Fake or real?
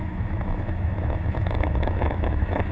fake